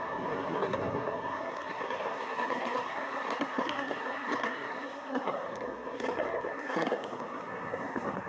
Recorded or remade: remade